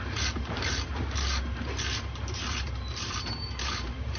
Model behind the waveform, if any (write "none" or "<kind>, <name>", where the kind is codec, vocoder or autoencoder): vocoder, BigVGAN v2